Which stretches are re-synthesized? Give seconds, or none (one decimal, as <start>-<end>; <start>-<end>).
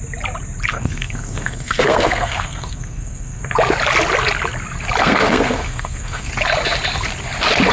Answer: 0.7-3.4; 5.0-6.3